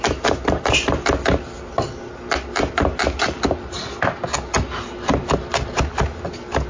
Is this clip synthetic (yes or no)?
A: no